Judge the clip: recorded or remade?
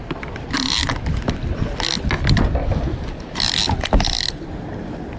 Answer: recorded